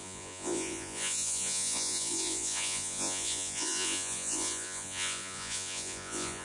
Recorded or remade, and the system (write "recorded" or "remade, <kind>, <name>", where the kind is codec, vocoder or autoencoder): remade, vocoder, Vocos